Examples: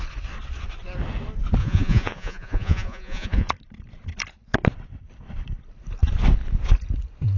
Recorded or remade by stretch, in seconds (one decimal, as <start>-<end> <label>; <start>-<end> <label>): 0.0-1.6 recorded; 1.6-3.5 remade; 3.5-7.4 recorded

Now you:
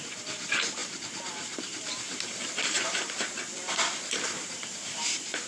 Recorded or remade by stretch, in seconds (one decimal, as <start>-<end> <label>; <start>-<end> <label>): 0.0-5.5 remade

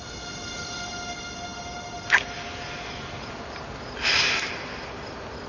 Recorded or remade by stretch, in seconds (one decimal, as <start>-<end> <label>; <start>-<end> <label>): 0.0-5.5 recorded

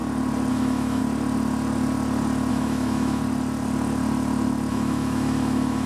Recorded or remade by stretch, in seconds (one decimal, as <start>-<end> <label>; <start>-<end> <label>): 0.0-0.5 recorded; 0.5-1.0 remade; 1.0-2.5 recorded; 2.5-3.2 remade; 3.2-4.7 recorded; 4.7-5.9 remade

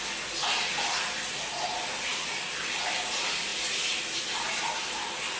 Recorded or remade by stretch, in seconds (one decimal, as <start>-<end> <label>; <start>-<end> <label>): 0.0-5.4 recorded

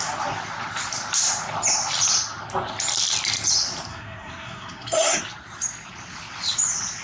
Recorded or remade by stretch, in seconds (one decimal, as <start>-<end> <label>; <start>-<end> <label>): 0.0-3.9 recorded; 3.9-5.2 remade; 5.2-7.0 recorded

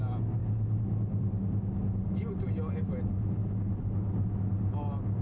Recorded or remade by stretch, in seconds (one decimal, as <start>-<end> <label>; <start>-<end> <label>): 0.0-5.2 recorded

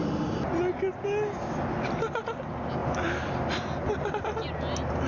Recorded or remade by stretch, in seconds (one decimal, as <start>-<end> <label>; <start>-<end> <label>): 0.0-5.1 recorded